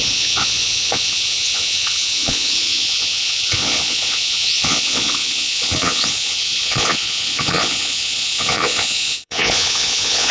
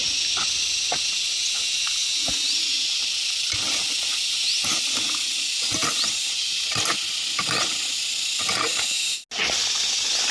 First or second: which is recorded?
second